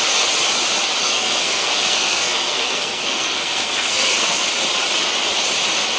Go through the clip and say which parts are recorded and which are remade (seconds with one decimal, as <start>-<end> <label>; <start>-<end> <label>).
0.0-1.0 recorded; 1.0-4.5 remade; 4.5-6.0 recorded

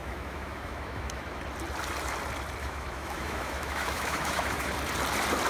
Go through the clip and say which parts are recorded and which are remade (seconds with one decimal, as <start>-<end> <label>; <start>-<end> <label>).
0.0-1.4 remade; 1.4-2.6 recorded; 2.6-4.7 remade; 4.7-5.5 recorded

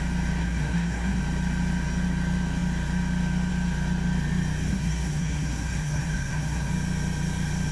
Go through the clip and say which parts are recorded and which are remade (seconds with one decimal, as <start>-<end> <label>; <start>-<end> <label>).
0.0-0.4 recorded; 0.4-1.2 remade; 1.2-4.7 recorded; 4.7-6.7 remade; 6.7-7.7 recorded

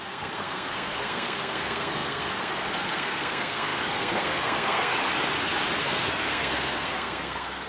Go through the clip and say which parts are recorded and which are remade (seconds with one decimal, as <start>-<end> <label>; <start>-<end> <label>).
0.0-4.9 remade; 4.9-5.8 recorded; 5.8-7.7 remade

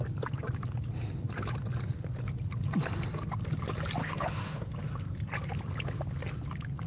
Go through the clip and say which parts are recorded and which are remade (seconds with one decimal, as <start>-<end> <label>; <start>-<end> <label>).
0.0-4.0 recorded; 4.0-4.7 remade; 4.7-6.9 recorded